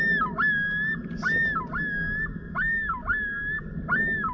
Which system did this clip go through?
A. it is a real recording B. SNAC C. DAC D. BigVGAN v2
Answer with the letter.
A